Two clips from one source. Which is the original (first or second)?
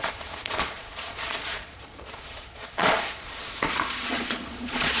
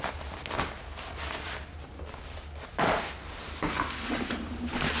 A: second